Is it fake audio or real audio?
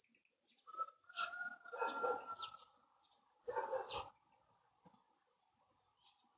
real